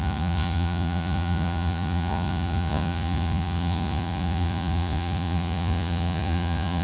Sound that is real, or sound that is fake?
fake